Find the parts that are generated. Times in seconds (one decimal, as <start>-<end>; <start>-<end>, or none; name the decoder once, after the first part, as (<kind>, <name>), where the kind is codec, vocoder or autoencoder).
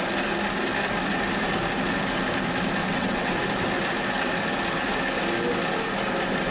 2.8-3.4 (vocoder, WaveNeXt)